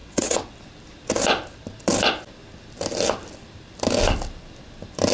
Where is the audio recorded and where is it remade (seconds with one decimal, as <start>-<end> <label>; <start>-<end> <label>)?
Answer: 0.0-0.5 remade; 0.5-5.1 recorded